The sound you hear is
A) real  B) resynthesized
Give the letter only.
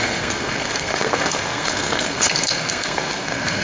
B